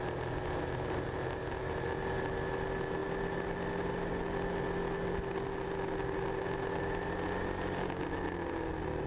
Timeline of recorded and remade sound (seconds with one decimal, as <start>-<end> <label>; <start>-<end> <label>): 0.0-9.1 recorded